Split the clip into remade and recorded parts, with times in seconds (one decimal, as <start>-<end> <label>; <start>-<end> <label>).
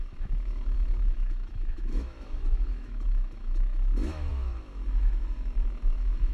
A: 0.0-6.3 remade